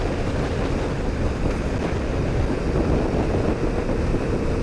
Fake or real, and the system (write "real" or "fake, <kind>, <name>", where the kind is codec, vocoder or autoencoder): real